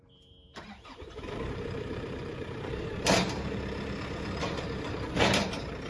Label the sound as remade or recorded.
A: remade